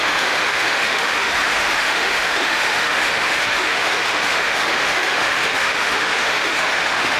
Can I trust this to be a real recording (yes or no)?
no